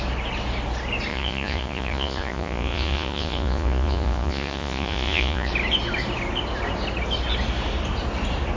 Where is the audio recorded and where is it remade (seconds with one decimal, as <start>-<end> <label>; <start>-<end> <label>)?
0.0-1.1 recorded; 1.1-5.5 remade; 5.5-8.6 recorded